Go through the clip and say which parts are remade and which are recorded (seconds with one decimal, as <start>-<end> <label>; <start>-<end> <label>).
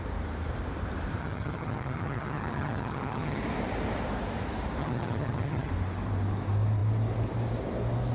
0.0-1.2 recorded; 1.2-3.4 remade; 3.4-4.8 recorded; 4.8-5.7 remade; 5.7-8.1 recorded